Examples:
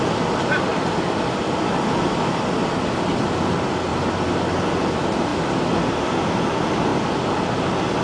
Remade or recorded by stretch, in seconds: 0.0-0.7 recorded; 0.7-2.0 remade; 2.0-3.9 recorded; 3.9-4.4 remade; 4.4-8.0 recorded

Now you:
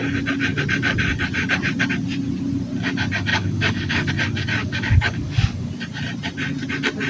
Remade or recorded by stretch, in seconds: 0.0-3.3 recorded; 3.3-4.1 remade; 4.1-4.6 recorded; 4.6-5.7 remade; 5.7-7.1 recorded

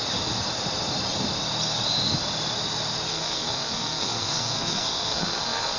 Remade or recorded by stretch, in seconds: 0.0-3.1 recorded; 3.1-5.8 remade